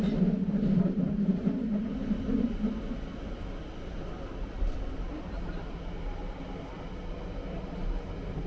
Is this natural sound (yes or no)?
yes